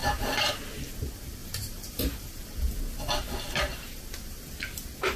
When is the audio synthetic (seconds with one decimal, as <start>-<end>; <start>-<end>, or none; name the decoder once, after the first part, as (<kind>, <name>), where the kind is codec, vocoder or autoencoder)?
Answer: 0.0-0.5 (vocoder, BigVGAN v2); 1.4-2.7; 3.7-4.4